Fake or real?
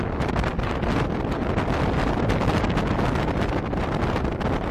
real